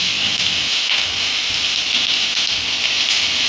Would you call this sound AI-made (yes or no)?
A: no